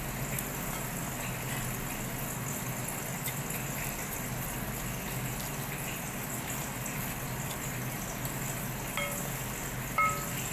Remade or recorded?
recorded